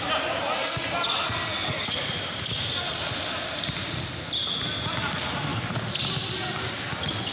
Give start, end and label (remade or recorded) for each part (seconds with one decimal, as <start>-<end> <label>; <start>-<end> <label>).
0.0-7.3 recorded